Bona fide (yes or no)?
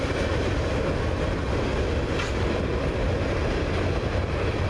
yes